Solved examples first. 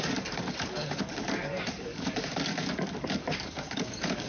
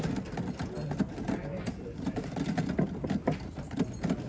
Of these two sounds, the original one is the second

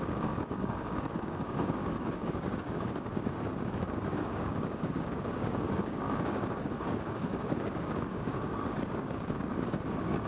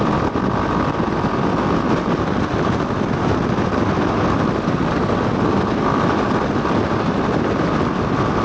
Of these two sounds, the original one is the second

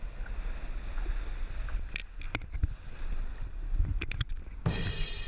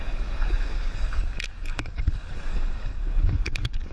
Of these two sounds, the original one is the first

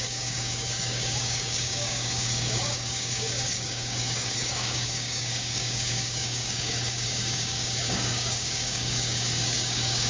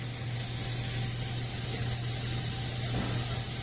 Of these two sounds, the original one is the second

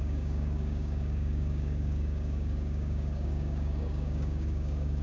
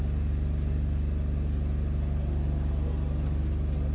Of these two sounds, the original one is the second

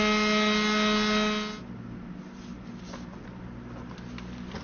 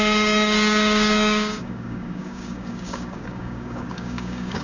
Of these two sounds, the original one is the first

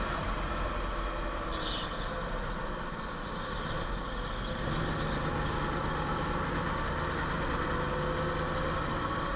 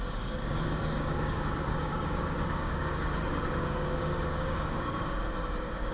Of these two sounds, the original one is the first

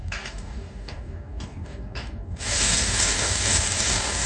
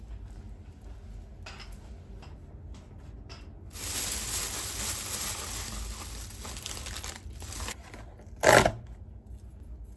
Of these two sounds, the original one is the second